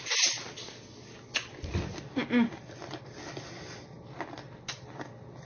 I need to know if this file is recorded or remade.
recorded